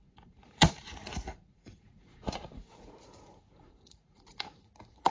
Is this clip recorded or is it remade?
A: remade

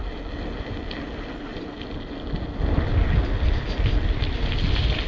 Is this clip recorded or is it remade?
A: recorded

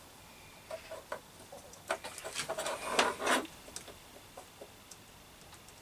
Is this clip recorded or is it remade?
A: recorded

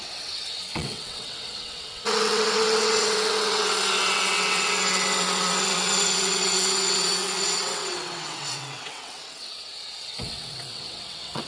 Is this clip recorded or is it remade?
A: remade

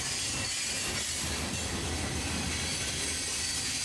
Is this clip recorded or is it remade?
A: recorded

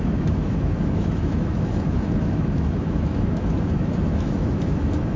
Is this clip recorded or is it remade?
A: remade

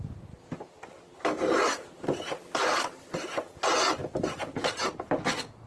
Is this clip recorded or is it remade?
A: recorded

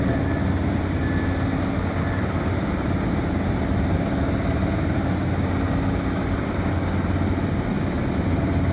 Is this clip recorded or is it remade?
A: recorded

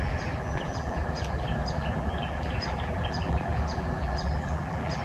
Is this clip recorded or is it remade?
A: remade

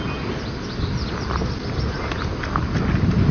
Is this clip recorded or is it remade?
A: recorded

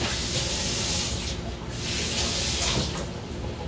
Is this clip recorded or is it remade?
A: recorded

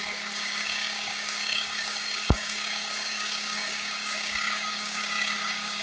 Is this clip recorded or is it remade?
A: remade